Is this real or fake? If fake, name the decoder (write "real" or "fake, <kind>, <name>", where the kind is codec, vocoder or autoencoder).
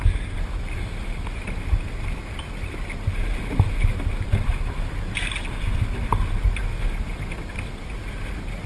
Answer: real